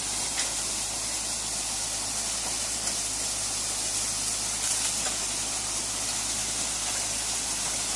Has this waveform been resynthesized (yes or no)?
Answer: no